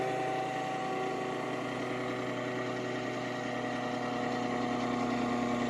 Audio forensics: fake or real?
real